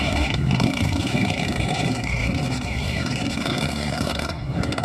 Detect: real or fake fake